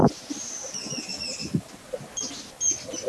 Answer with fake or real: real